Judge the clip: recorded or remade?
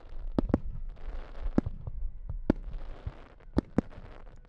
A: recorded